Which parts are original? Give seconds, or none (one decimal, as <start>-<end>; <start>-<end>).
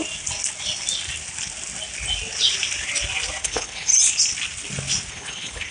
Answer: 0.0-3.4; 3.9-5.1